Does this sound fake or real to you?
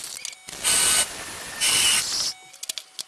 real